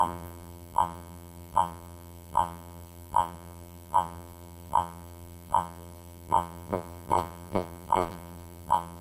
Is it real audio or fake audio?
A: fake